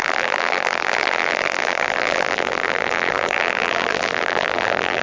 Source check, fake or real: fake